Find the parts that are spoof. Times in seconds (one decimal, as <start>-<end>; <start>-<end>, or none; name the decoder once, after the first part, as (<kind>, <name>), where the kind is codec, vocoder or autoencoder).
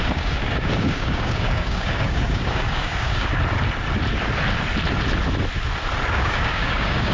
0.0-3.3 (codec, DAC); 6.1-7.1